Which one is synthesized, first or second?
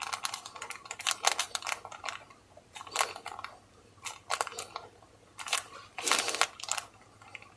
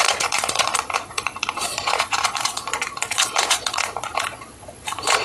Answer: second